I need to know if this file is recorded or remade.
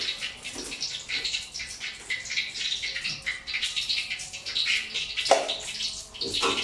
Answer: recorded